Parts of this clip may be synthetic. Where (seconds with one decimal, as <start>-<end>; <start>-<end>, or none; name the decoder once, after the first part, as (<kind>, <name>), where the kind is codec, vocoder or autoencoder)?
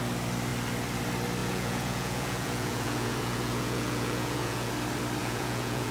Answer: 1.4-4.7 (vocoder, Vocos); 5.2-5.9